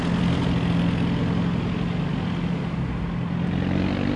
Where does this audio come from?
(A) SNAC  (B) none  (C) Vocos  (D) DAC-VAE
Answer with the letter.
B